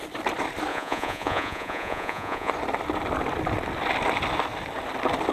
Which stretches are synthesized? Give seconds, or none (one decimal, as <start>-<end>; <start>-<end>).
0.7-2.5